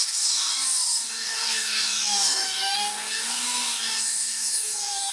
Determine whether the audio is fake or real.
fake